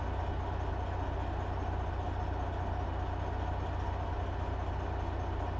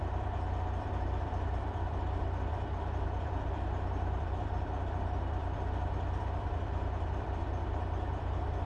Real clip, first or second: first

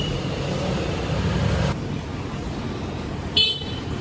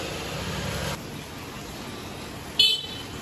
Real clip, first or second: second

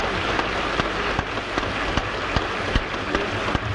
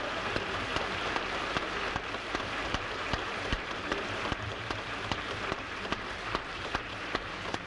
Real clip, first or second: first